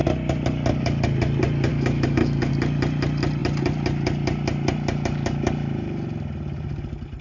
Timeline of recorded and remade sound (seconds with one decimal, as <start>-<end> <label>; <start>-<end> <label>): 0.0-1.7 recorded; 1.7-2.5 remade; 2.5-7.2 recorded